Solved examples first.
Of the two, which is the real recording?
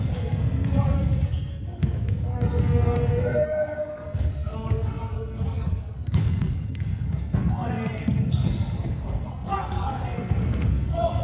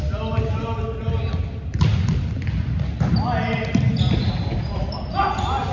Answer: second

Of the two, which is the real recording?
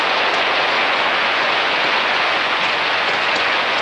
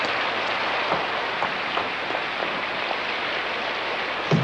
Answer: second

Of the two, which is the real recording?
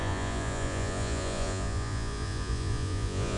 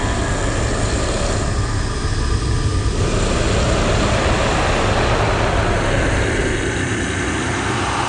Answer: second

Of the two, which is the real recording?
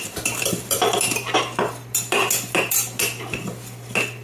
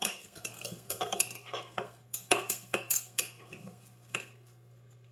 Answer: first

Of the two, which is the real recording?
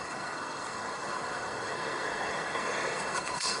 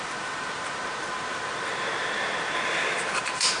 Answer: second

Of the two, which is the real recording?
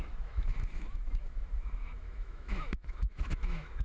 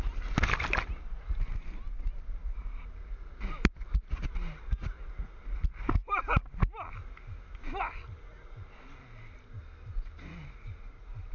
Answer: second